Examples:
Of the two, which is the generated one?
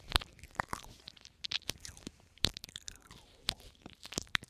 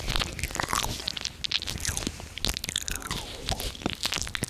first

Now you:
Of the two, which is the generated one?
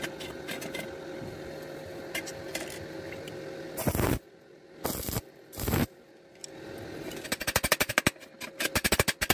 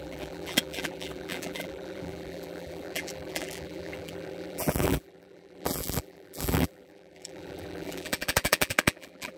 second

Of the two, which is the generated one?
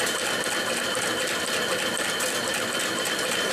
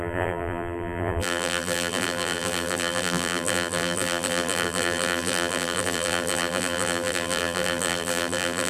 second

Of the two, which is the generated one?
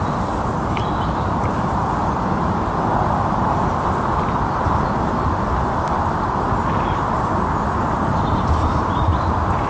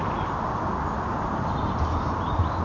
first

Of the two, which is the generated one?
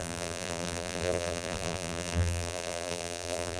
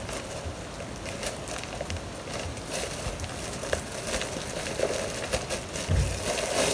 first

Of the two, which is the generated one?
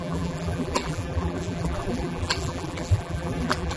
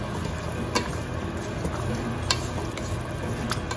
first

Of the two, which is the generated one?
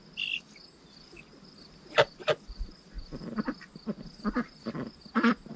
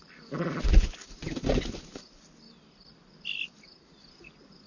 second